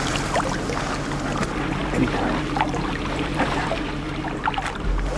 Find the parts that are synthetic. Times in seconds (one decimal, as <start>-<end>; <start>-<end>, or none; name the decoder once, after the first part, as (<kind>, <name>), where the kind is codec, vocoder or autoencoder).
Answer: 1.8-4.1 (vocoder, BigVGAN v2)